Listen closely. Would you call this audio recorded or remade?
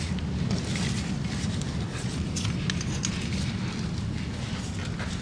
recorded